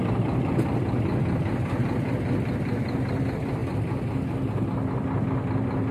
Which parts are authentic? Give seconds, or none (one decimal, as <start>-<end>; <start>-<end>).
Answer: 3.6-5.9